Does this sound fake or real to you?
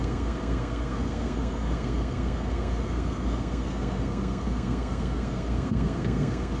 fake